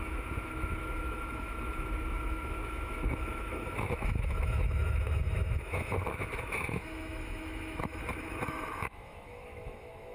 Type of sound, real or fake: fake